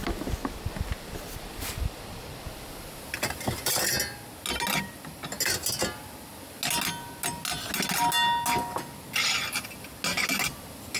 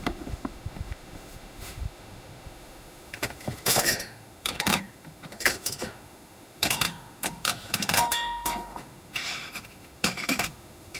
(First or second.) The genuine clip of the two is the first